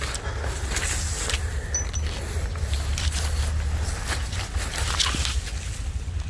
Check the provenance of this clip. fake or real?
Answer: real